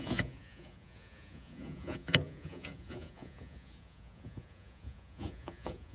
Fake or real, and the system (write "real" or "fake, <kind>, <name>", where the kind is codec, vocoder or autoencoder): fake, vocoder, Vocos